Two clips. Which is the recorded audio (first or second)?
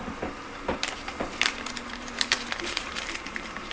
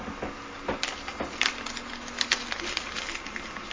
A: second